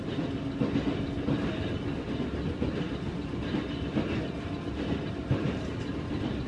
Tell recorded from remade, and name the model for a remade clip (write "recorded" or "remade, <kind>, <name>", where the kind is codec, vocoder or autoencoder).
recorded